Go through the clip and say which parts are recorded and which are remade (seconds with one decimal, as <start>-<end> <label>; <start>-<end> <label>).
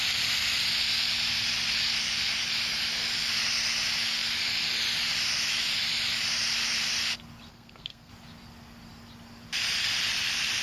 0.0-7.5 recorded; 7.5-8.1 remade; 8.1-10.6 recorded